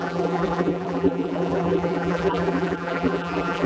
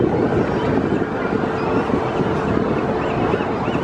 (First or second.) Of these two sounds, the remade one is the first